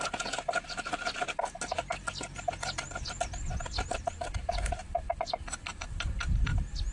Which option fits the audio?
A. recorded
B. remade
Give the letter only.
A